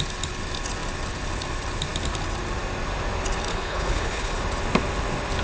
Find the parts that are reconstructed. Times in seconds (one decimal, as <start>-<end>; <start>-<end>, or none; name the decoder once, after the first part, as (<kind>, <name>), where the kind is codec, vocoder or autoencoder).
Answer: 3.5-4.4 (codec, HILCodec)